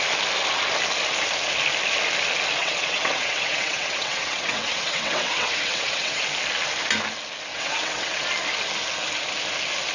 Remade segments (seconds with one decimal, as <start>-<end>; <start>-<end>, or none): 2.6-6.2; 7.5-8.2